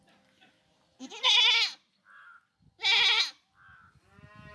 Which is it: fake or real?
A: real